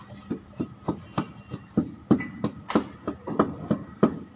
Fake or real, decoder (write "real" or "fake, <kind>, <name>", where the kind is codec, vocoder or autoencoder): real